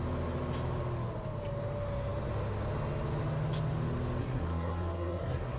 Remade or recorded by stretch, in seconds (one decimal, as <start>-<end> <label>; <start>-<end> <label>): 0.0-4.2 recorded; 4.2-5.6 remade